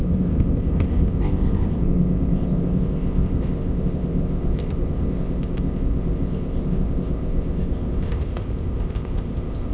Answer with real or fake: fake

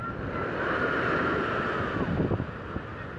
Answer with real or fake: real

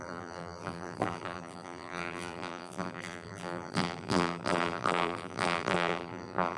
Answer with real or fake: fake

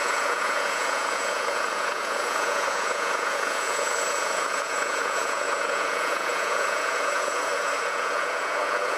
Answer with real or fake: fake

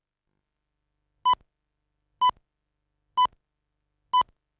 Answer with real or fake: real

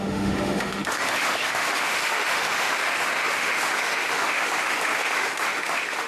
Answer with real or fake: fake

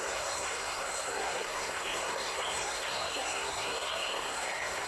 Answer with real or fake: fake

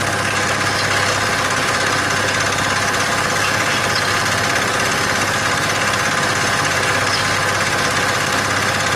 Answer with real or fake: real